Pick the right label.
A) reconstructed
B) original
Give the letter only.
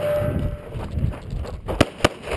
B